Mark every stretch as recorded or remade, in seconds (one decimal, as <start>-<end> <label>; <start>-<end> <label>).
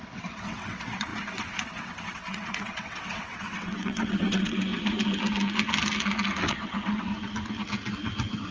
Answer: 0.0-4.7 remade; 4.7-6.4 recorded; 6.4-7.1 remade; 7.1-8.5 recorded